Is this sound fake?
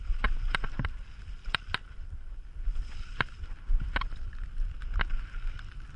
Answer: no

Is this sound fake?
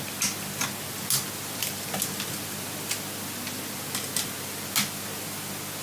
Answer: no